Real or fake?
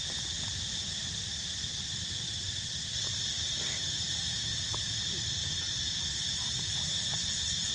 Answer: real